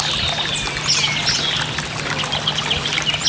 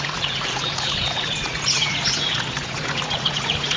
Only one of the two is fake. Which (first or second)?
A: second